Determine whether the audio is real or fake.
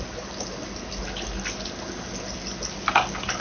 real